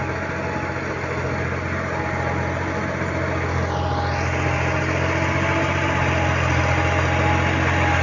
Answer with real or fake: real